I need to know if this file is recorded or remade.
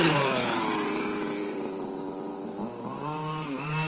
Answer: remade